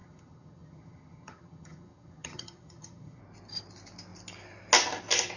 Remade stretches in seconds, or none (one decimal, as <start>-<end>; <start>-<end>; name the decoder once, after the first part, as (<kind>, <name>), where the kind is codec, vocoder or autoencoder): 0.0-3.2 (vocoder, HiFi-GAN)